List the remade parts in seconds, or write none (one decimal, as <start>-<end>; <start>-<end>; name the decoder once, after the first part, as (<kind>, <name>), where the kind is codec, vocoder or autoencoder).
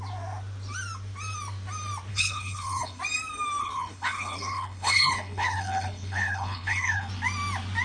2.1-3.0 (codec, HILCodec); 3.6-7.1